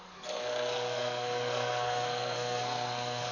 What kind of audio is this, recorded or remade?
remade